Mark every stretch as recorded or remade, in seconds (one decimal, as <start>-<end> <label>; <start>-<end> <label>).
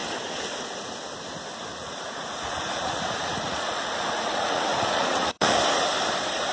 0.0-1.7 recorded; 1.7-5.6 remade; 5.6-6.5 recorded